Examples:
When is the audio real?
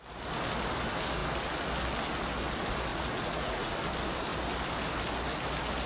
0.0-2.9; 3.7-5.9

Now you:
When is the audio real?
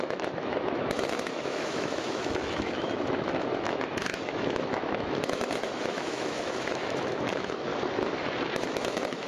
7.7-8.5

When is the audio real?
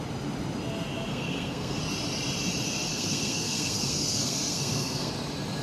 0.0-1.1; 1.8-2.9; 5.1-5.6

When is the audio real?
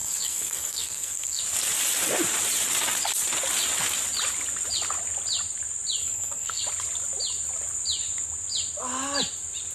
1.4-6.0; 6.6-9.7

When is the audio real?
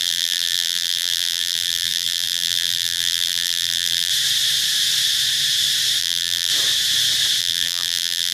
4.1-6.0; 6.5-7.4